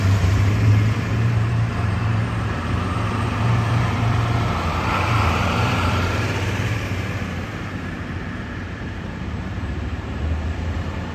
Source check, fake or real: fake